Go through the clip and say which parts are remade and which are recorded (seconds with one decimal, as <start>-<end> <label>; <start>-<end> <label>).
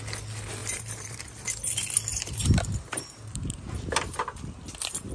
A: 0.0-0.6 recorded; 0.6-1.3 remade; 1.3-2.1 recorded; 2.1-4.4 remade; 4.4-5.1 recorded